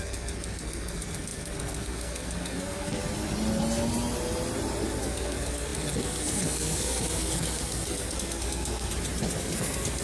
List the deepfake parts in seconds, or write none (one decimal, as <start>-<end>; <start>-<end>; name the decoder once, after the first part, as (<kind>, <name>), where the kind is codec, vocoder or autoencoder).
0.0-3.0 (codec, SNAC); 5.0-8.9; 9.4-10.0